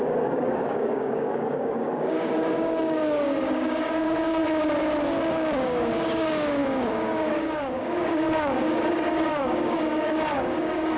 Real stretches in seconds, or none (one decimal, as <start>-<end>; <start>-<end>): 4.4-5.3